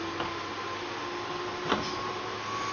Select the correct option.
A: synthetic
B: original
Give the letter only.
B